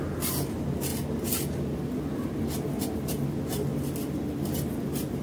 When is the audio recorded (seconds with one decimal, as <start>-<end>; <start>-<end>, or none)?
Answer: 0.0-5.2